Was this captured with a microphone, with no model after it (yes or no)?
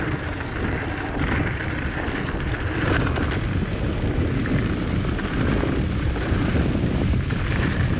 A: yes